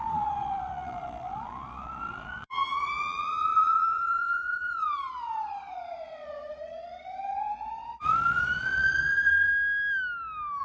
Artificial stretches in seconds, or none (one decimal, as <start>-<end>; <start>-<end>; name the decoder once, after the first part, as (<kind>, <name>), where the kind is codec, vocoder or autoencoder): 0.0-9.5 (vocoder, Vocos)